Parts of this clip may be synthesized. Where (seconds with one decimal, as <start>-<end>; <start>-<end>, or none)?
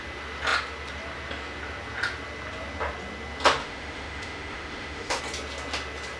3.6-5.2